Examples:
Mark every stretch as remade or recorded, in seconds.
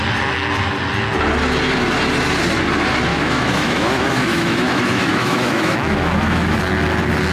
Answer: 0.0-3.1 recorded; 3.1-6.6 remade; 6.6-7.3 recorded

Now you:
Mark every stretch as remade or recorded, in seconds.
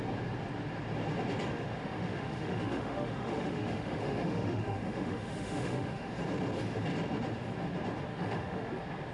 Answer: 0.0-1.5 recorded; 1.5-6.1 remade; 6.1-8.1 recorded; 8.1-8.7 remade; 8.7-9.1 recorded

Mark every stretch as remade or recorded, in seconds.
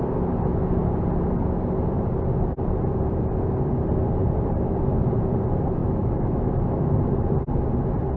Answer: 0.0-5.8 recorded; 5.8-6.9 remade; 6.9-8.2 recorded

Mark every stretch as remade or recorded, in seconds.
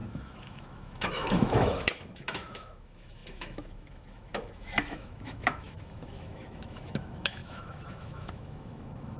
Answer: 0.0-9.2 remade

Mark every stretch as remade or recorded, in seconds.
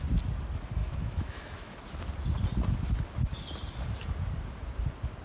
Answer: 0.0-0.8 recorded; 0.8-1.8 remade; 1.8-5.2 recorded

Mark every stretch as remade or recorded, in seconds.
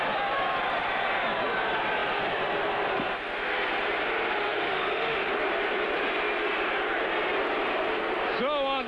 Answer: 0.0-4.4 recorded; 4.4-5.3 remade; 5.3-8.9 recorded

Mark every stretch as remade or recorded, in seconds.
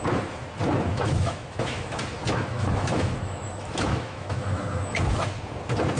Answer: 0.0-0.9 recorded; 0.9-2.0 remade; 2.0-2.5 recorded; 2.5-4.6 remade; 4.6-6.0 recorded